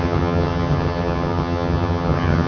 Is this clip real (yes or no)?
no